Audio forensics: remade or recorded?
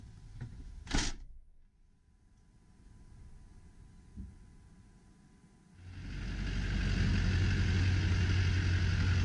recorded